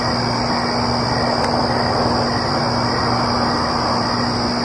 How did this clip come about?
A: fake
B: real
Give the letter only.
B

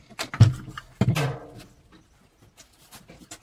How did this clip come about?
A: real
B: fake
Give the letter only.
A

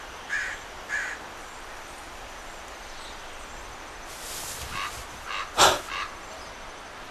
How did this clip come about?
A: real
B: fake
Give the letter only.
A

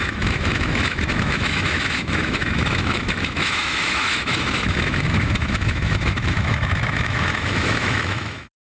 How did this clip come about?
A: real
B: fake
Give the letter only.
B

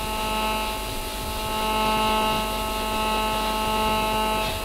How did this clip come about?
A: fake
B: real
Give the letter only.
B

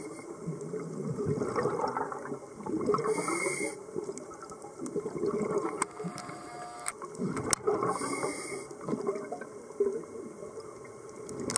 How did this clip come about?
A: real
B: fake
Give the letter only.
A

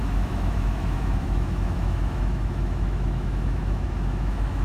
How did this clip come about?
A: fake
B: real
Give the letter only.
A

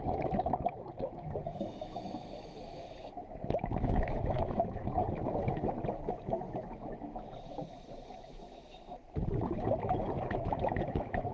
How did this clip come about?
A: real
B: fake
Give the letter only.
B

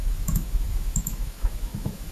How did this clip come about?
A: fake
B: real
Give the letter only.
A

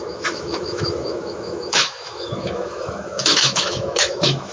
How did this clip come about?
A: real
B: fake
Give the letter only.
B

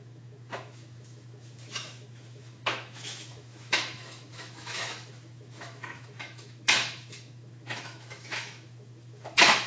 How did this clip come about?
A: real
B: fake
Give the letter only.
B